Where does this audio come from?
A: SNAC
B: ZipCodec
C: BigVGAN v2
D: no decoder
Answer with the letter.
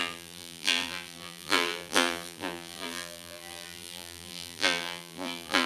C